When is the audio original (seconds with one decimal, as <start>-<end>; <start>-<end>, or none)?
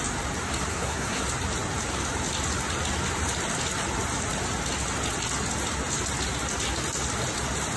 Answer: 0.0-0.7; 1.2-7.8